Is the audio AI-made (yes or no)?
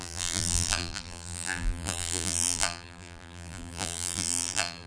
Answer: yes